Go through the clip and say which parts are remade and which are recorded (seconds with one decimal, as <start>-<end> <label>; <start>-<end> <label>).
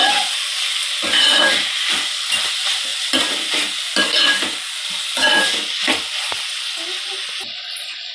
0.0-1.9 remade; 1.9-8.1 recorded